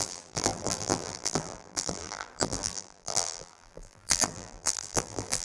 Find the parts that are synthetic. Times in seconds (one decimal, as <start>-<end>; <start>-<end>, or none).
0.0-5.4